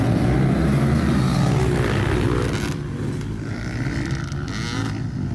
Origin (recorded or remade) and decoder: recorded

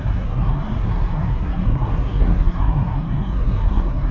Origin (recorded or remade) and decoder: remade, codec, SNAC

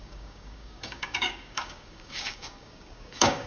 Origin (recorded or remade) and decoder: remade, codec, DAC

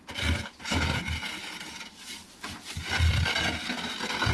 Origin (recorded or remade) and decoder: remade, vocoder, BigVGAN v2